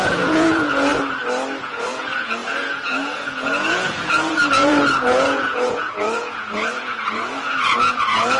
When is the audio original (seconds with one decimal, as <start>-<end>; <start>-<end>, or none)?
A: 0.9-1.6